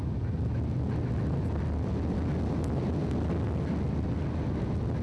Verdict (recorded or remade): recorded